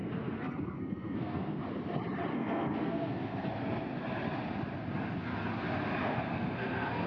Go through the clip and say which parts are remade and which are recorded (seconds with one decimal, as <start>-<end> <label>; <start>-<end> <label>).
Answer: 0.0-1.6 remade; 1.6-2.3 recorded; 2.3-3.5 remade; 3.5-6.0 recorded; 6.0-7.1 remade